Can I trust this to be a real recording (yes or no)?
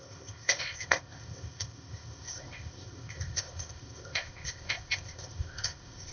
no